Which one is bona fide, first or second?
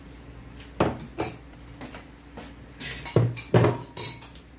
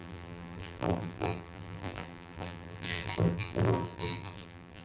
first